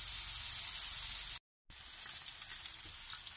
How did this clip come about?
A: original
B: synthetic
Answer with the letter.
A